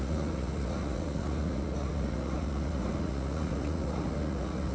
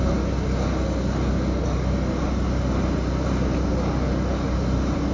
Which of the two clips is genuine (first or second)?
second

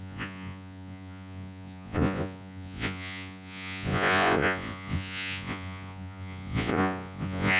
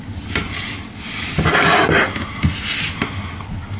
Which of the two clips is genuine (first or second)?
second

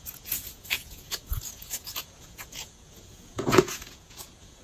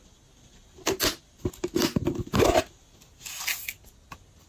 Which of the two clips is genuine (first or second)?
second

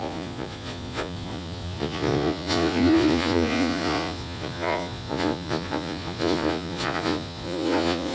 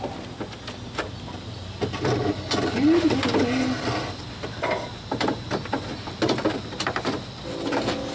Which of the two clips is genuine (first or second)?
second